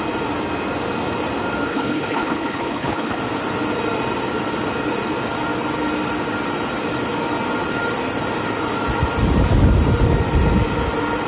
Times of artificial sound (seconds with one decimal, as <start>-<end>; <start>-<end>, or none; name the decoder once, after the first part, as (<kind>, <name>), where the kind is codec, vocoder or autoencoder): 1.7-3.2 (codec, HILCodec)